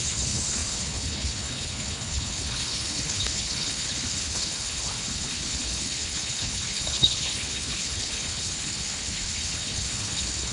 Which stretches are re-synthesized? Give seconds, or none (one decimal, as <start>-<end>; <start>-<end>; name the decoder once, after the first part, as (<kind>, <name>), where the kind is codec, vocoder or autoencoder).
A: 0.0-10.5 (codec, HILCodec)